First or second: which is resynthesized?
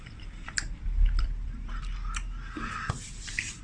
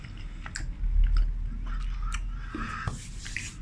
first